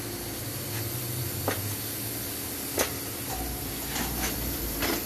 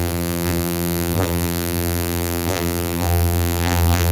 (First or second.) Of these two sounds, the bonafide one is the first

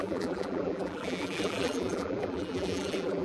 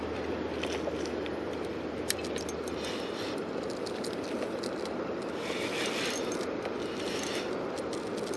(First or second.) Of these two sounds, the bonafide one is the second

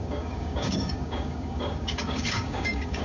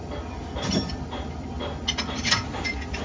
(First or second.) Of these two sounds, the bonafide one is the second